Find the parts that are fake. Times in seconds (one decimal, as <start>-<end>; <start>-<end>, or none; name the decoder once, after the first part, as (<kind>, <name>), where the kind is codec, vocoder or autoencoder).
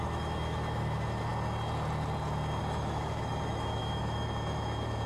0.0-1.3 (autoencoder, DAC-VAE); 2.6-5.1